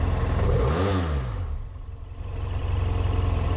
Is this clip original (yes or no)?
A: yes